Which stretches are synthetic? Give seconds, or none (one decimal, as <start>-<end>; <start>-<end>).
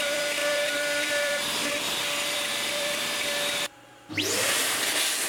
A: 0.0-5.3